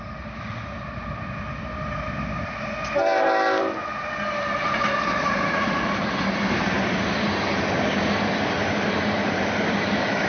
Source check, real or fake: fake